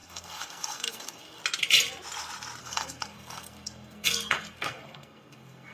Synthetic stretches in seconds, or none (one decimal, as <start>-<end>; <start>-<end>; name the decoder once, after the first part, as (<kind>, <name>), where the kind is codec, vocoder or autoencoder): 0.0-1.4 (codec, SNAC); 2.6-5.7